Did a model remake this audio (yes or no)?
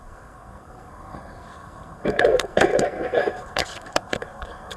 yes